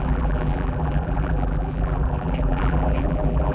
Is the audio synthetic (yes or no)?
yes